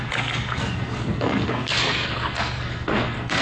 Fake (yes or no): yes